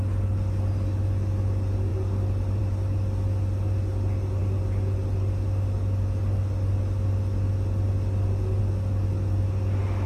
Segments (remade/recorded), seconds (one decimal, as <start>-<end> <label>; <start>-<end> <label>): 0.0-10.1 recorded